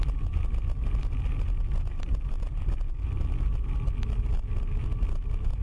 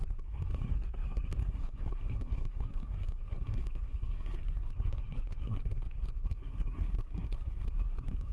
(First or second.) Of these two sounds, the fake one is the second